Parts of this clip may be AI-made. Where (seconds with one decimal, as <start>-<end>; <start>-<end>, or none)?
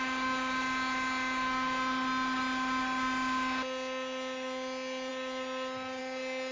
none